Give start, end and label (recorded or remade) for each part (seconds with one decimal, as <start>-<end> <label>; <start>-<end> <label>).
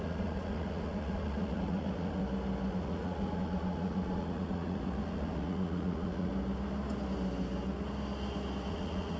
0.0-2.2 remade; 2.2-2.7 recorded; 2.7-6.3 remade; 6.3-8.7 recorded; 8.7-9.2 remade